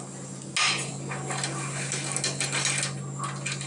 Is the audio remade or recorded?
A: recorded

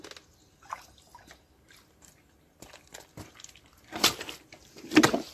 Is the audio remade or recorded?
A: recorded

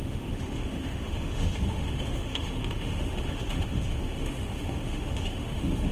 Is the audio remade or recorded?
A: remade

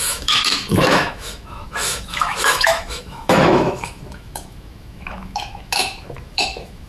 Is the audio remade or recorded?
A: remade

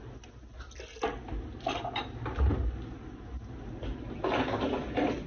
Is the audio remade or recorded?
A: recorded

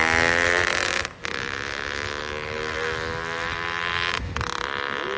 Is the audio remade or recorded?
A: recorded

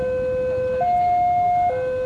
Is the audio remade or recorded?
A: recorded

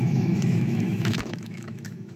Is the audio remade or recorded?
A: remade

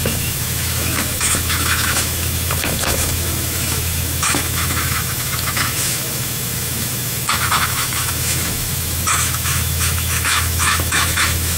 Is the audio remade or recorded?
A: remade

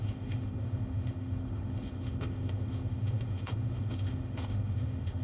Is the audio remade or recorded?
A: remade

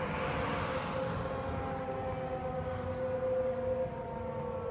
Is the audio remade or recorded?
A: recorded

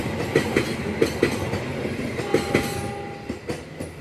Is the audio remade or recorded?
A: recorded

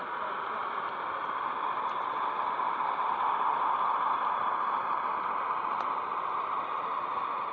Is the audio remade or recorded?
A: recorded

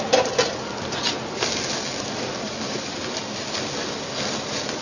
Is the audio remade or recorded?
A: recorded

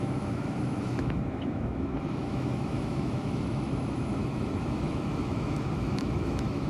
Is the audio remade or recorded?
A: remade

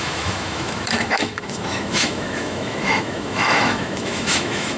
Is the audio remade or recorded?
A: remade